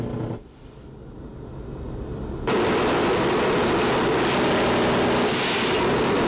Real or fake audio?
real